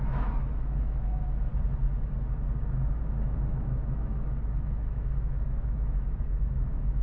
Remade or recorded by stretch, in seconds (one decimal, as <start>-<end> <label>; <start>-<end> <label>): 0.0-1.5 remade; 1.5-3.0 recorded; 3.0-7.0 remade